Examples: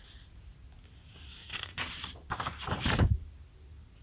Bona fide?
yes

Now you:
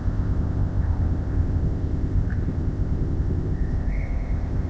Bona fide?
no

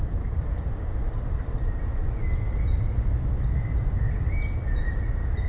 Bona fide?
yes